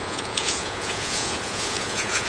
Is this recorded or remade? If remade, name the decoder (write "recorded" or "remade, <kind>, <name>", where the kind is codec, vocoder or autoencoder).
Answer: remade, vocoder, Vocos